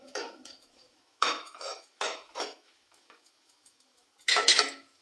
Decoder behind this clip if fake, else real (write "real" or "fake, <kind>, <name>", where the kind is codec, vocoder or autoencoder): fake, autoencoder, DAC-VAE